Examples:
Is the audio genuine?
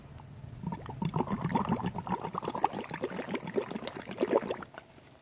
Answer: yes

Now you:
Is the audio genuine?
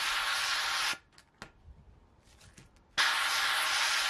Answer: yes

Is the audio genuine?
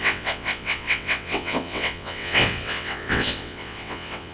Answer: no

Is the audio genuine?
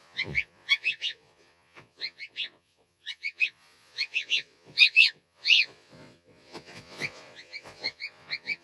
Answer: no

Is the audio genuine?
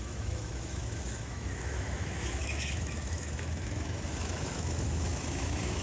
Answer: no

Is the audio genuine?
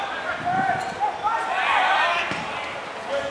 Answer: yes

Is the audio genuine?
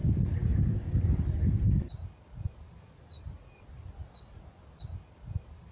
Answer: yes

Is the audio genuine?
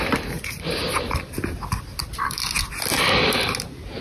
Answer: yes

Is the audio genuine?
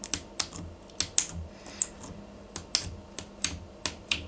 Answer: yes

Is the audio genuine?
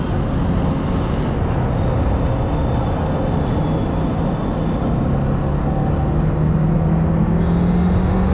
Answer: yes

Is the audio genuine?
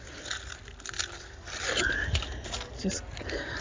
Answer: yes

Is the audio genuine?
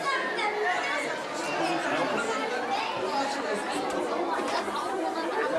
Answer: yes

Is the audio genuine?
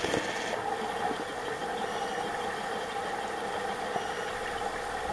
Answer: yes